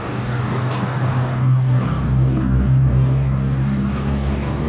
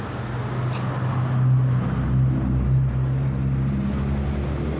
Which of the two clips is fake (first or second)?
first